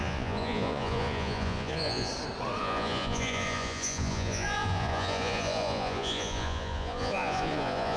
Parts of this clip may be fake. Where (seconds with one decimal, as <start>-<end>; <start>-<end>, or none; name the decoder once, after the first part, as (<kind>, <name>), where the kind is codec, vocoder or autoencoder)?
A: 0.0-2.1 (vocoder, Vocos); 2.6-8.0